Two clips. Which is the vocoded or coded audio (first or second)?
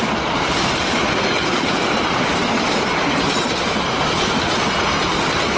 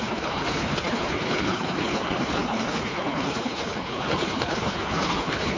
second